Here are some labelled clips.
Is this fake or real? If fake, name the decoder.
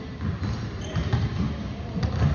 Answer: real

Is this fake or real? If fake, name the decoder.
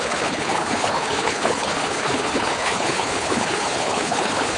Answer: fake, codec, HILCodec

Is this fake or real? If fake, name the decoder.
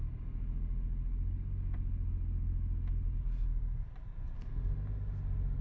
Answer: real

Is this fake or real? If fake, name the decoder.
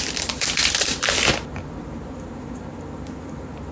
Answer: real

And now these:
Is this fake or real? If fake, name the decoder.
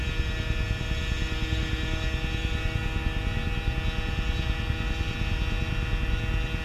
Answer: real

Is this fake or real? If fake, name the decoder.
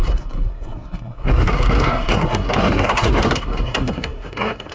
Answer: fake, codec, SNAC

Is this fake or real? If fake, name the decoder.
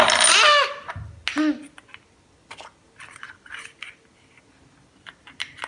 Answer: real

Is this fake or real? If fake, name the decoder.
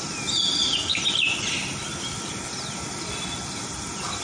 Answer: real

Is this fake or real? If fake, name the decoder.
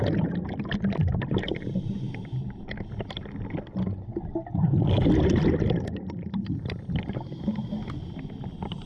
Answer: real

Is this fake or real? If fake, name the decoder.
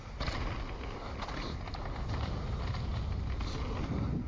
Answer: real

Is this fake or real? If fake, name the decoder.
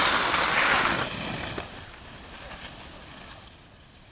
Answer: real